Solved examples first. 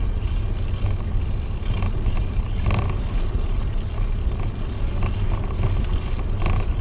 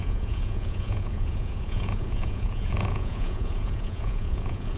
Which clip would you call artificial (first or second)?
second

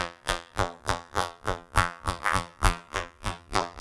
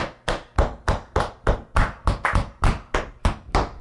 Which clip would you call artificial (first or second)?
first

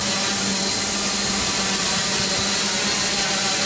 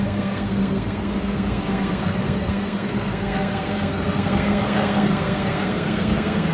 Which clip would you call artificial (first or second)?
second